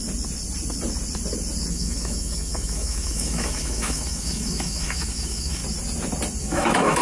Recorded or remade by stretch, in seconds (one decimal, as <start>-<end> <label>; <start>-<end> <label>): 0.0-1.7 recorded; 1.7-5.6 remade; 5.6-6.4 recorded; 6.4-7.0 remade